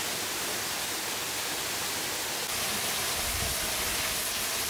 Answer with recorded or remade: recorded